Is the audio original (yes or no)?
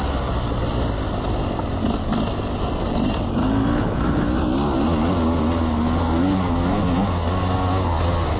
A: yes